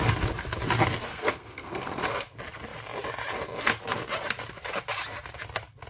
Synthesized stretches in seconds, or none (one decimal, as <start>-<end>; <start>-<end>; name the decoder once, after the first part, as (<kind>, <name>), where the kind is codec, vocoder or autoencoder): 1.1-2.0 (codec, SNAC)